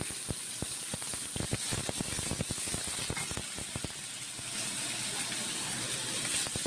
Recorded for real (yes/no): no